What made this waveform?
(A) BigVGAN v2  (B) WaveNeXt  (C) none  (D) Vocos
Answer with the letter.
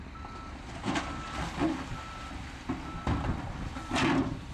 C